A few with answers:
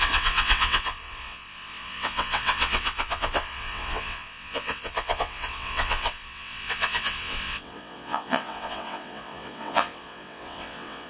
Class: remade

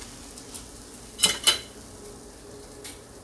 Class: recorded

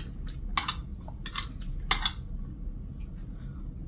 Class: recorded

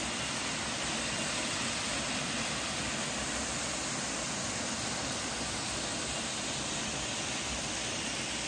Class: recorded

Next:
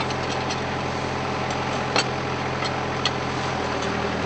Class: recorded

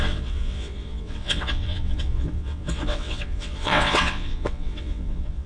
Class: remade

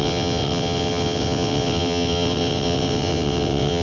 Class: remade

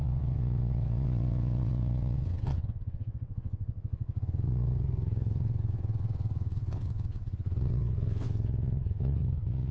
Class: remade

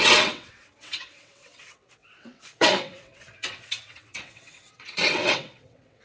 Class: remade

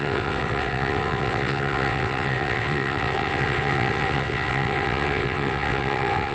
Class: remade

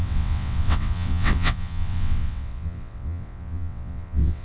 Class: remade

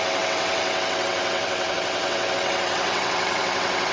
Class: remade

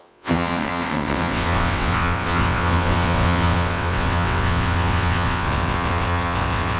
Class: remade